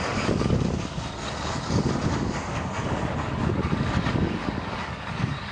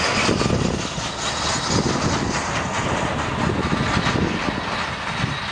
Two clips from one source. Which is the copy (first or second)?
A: first